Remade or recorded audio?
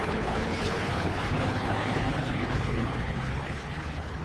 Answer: remade